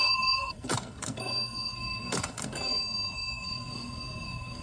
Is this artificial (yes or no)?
yes